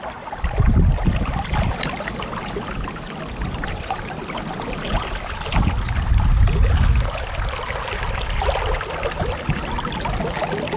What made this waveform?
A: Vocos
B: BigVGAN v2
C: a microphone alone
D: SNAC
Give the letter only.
C